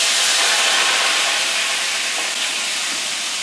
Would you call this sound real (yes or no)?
yes